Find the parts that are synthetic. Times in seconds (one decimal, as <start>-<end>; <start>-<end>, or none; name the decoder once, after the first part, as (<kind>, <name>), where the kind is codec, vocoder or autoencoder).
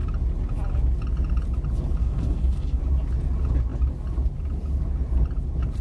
2.0-2.8 (codec, SNAC)